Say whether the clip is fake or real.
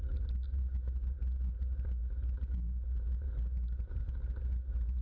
real